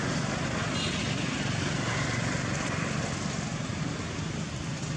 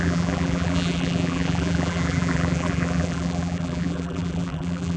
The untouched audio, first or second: first